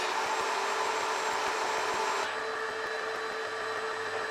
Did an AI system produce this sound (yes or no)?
no